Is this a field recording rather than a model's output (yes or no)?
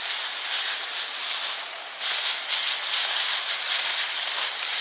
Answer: yes